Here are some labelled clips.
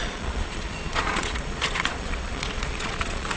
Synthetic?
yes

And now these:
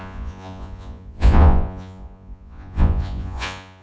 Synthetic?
yes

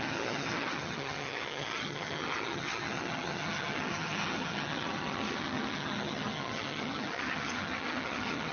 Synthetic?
yes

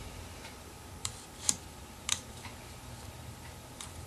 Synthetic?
yes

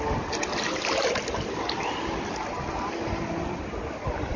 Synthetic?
no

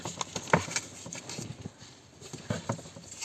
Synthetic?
no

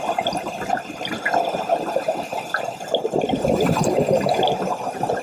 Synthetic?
no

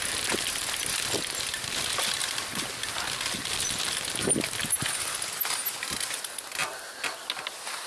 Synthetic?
no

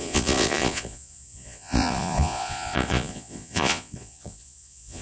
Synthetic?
yes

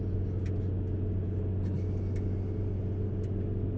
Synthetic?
no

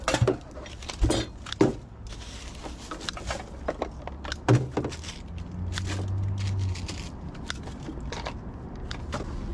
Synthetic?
no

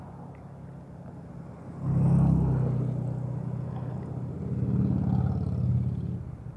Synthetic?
no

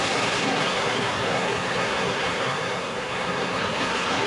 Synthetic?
yes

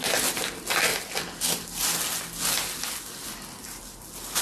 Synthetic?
no